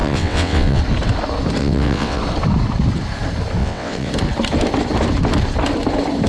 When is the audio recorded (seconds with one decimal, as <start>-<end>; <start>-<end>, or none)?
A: 0.8-1.6; 2.2-3.6; 4.1-6.3